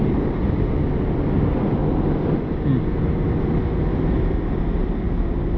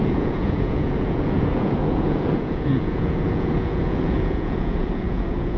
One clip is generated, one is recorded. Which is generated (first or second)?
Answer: second